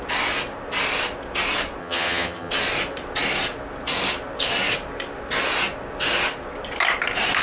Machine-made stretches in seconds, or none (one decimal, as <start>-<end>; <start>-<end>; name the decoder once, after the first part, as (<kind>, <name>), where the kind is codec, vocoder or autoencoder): 1.8-2.5 (vocoder, HiFi-GAN)